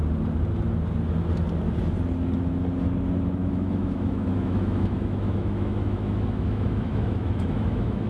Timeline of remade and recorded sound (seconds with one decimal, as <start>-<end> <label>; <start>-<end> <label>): 0.0-3.4 recorded; 3.4-8.1 remade